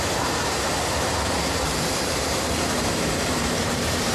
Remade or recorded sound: remade